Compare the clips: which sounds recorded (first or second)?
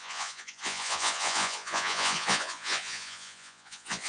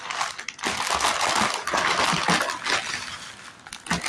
second